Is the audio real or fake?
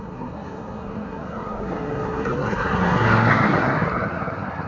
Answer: fake